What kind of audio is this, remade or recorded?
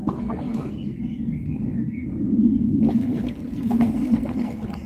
remade